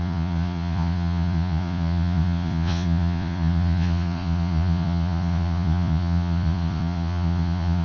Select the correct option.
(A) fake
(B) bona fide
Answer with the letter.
A